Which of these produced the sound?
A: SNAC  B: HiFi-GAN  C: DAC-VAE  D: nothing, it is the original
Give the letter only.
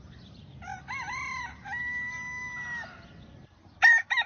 D